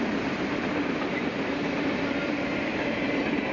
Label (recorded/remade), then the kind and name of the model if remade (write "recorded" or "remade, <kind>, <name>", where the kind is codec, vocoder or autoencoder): recorded